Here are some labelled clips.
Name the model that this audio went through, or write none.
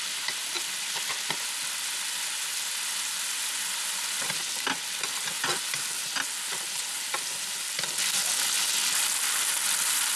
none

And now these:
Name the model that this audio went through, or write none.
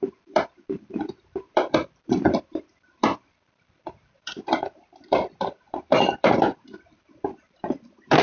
vocoder, BigVGAN v2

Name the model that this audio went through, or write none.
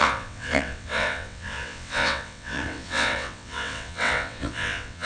vocoder, WaveNeXt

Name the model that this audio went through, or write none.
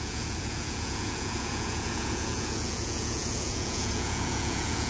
vocoder, Vocos